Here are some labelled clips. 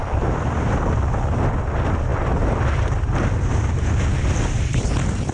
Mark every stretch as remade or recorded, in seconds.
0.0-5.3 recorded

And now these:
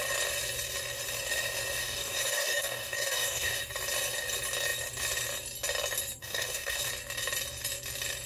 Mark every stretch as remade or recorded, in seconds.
0.0-1.8 recorded; 1.8-3.6 remade; 3.6-6.2 recorded; 6.2-6.9 remade; 6.9-8.3 recorded